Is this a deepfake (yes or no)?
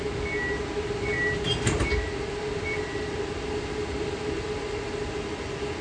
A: no